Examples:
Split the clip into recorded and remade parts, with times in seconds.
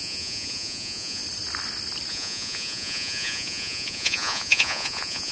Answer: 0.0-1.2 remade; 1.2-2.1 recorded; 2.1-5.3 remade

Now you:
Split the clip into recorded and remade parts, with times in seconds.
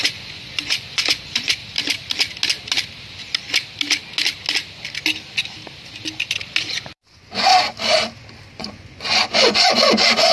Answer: 0.0-1.6 remade; 1.6-6.6 recorded; 6.6-7.5 remade; 7.5-8.5 recorded; 8.5-10.3 remade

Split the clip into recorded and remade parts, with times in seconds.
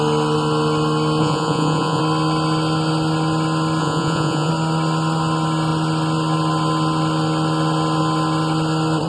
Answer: 0.0-1.2 recorded; 1.2-2.0 remade; 2.0-3.8 recorded; 3.8-4.5 remade; 4.5-9.1 recorded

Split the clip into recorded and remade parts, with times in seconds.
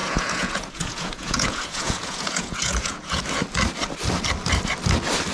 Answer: 0.0-3.2 remade; 3.2-5.3 recorded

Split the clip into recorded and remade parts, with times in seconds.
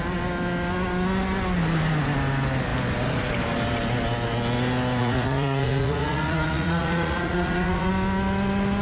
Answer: 0.0-5.0 recorded; 5.0-7.9 remade; 7.9-8.8 recorded